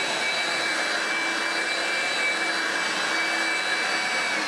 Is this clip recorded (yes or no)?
yes